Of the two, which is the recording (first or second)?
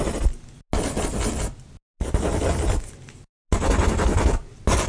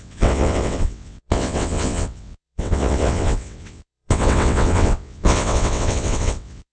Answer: first